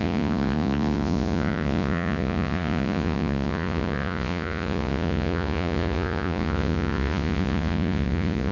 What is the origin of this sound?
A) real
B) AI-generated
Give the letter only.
B